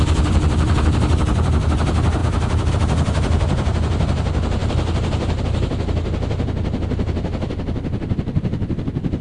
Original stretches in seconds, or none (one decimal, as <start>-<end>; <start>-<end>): 0.0-9.2